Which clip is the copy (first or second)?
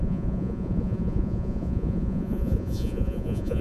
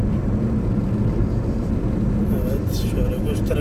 first